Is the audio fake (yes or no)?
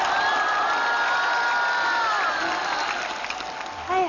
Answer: no